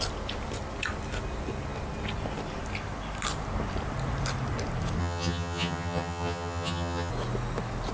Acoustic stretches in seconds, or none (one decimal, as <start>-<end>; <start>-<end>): 0.0-5.0; 7.1-7.9